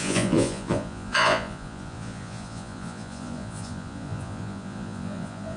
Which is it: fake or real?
fake